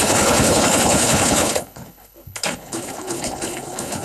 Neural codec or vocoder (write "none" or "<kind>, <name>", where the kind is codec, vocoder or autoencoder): codec, HILCodec